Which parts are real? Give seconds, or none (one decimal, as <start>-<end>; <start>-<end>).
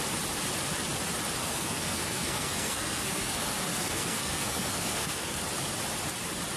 0.0-1.4; 5.4-6.6